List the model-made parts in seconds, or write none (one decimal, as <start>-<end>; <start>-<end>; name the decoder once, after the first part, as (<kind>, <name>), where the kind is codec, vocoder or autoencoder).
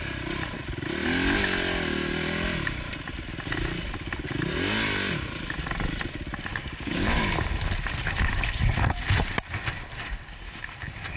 6.5-7.2 (codec, DAC)